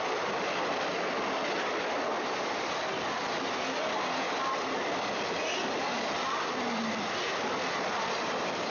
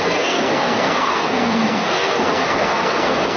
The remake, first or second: second